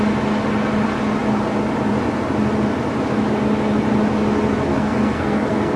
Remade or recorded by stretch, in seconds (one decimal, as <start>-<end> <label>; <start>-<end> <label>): 0.0-4.7 recorded; 4.7-5.8 remade